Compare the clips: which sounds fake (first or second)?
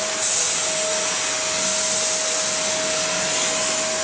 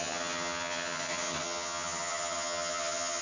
second